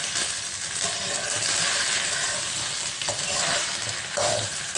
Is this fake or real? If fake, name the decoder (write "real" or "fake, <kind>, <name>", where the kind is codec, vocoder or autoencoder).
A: real